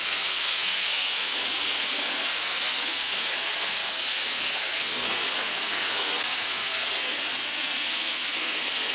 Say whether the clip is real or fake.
fake